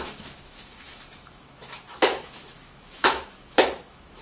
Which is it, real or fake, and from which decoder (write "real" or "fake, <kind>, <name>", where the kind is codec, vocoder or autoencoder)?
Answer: fake, autoencoder, DAC-VAE